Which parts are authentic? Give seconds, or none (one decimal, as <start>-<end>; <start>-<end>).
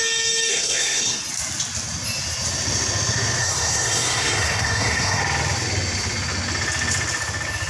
0.0-0.5; 1.2-3.4; 5.2-7.7